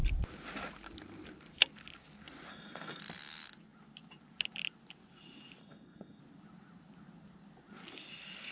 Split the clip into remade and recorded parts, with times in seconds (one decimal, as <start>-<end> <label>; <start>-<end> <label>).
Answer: 0.0-2.5 recorded; 2.5-3.0 remade; 3.0-5.6 recorded; 5.6-6.2 remade; 6.2-8.5 recorded